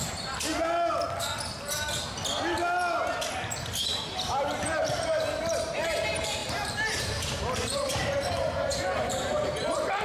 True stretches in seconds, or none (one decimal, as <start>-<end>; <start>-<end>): 0.5-4.3; 8.0-8.8